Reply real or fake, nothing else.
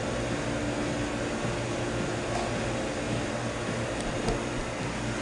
real